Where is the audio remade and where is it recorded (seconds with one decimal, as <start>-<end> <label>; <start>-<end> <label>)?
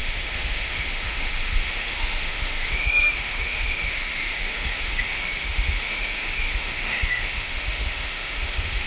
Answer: 0.0-8.9 remade